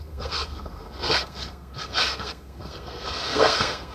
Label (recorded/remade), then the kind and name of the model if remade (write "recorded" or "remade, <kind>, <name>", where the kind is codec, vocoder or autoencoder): remade, codec, SNAC